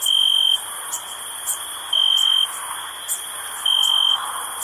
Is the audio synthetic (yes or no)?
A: no